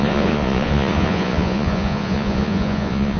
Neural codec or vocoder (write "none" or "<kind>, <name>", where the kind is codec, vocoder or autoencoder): vocoder, Vocos